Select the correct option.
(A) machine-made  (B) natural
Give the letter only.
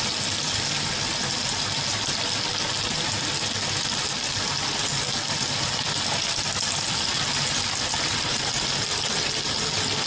B